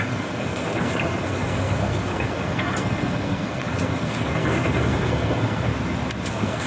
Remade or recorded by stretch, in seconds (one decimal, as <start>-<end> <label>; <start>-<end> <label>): 0.0-5.7 remade; 5.7-6.3 recorded; 6.3-6.7 remade